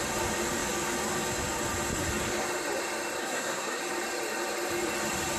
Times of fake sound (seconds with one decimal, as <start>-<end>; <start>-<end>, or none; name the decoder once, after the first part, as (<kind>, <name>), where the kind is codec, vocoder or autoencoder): 3.2-3.8 (codec, SNAC)